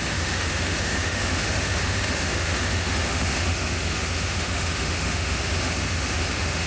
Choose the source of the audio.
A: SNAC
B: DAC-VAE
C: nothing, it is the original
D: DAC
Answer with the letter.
B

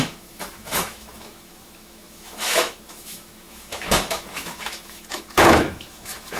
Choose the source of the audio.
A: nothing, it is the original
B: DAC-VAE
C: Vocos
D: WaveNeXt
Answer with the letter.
B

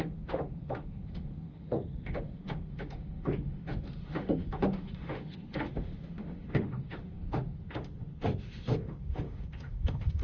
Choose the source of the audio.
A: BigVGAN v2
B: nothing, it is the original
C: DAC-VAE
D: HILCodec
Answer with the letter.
C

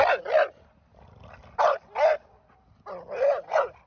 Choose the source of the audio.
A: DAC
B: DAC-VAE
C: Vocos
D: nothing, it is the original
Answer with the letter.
D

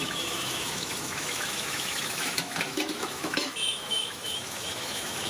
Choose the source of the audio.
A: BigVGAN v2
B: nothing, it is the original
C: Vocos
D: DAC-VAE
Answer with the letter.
D